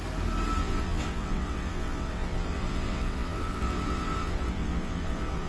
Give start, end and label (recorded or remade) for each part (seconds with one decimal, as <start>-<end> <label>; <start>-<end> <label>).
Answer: 0.0-0.6 recorded; 0.6-5.5 remade